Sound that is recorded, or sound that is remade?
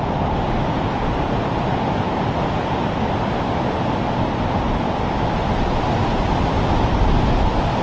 recorded